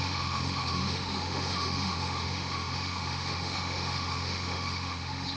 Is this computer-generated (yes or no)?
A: yes